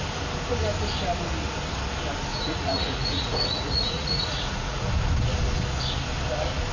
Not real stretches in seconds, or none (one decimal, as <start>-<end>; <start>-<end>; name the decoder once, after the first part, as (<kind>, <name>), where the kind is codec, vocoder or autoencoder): 2.3-4.9 (vocoder, Vocos)